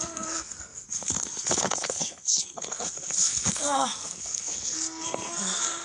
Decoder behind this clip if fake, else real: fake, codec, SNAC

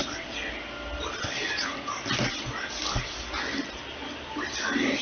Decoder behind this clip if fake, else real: real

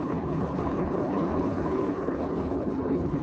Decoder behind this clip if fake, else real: fake, codec, HILCodec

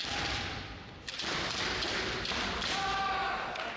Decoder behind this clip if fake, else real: real